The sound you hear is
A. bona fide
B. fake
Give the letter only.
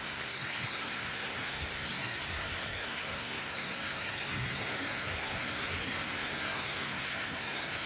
B